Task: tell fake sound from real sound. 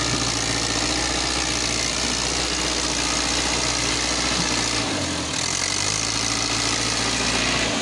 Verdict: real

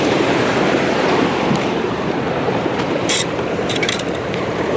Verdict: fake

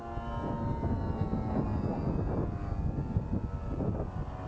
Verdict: real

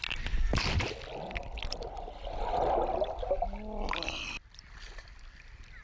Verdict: real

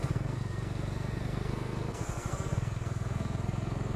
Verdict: fake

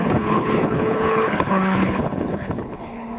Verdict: fake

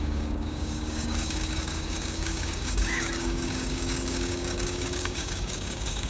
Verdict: fake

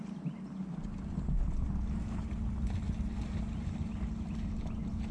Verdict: real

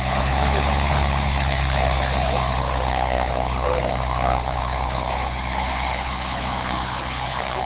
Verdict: fake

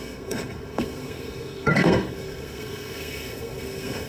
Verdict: fake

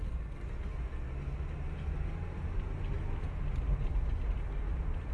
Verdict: real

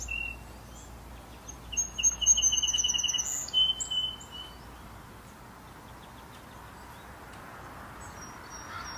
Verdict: real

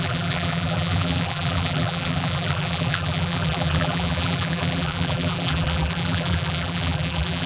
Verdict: fake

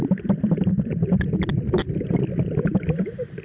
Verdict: real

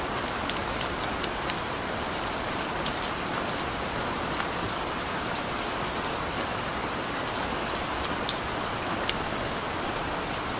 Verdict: real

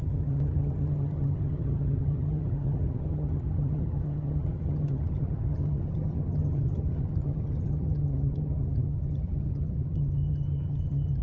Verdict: fake